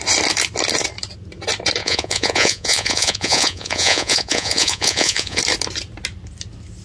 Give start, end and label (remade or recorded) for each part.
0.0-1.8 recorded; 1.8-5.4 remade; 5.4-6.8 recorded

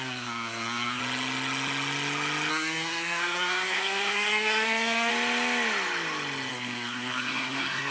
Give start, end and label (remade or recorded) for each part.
0.0-1.0 remade; 1.0-2.5 recorded; 2.5-5.1 remade; 5.1-6.5 recorded; 6.5-7.9 remade

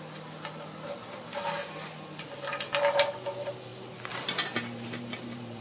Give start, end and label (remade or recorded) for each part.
0.0-3.7 recorded; 3.7-5.6 remade

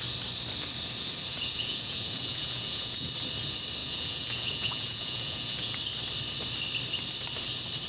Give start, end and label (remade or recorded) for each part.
0.0-1.3 recorded; 1.3-3.1 remade; 3.1-3.8 recorded; 3.8-5.8 remade; 5.8-7.9 recorded

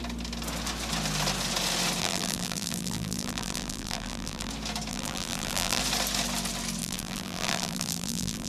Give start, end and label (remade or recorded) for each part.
0.0-2.0 recorded; 2.0-4.5 remade; 4.5-4.9 recorded; 4.9-5.8 remade; 5.8-6.8 recorded; 6.8-8.5 remade

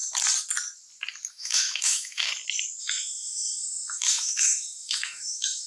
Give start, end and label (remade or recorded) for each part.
0.0-1.3 recorded; 1.3-2.3 remade; 2.3-2.8 recorded; 2.8-5.7 remade